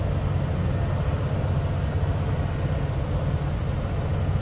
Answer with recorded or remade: recorded